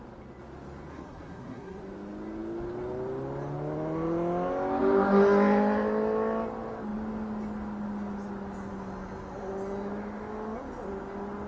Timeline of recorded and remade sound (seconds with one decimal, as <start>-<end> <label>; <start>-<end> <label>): 0.0-0.9 recorded; 0.9-1.8 remade; 1.8-11.5 recorded